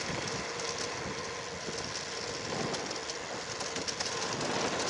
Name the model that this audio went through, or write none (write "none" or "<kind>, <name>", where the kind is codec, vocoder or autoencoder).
none